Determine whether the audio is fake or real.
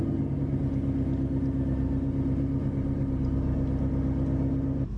real